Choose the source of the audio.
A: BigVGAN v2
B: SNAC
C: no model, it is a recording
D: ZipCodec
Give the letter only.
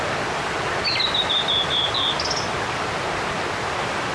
C